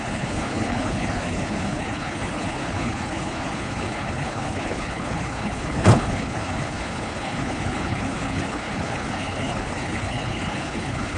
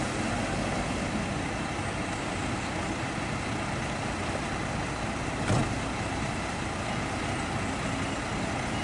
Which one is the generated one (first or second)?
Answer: first